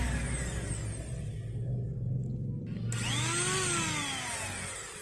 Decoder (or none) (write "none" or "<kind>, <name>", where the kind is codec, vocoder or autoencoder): none